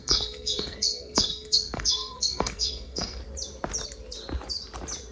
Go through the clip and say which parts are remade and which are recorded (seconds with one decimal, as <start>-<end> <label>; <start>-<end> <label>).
0.0-3.2 remade; 3.2-5.1 recorded